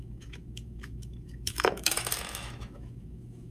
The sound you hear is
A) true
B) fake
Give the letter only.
B